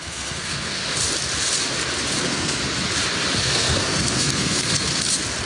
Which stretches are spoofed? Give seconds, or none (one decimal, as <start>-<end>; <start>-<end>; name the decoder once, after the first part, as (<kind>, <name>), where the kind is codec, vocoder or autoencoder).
0.0-0.8 (codec, SNAC); 2.2-2.6; 3.4-4.9